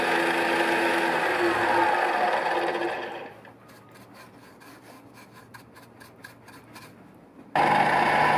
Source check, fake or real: real